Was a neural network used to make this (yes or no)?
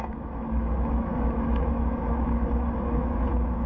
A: yes